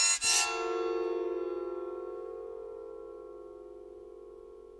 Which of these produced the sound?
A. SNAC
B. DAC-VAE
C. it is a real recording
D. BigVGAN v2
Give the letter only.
C